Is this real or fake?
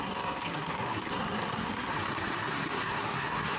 fake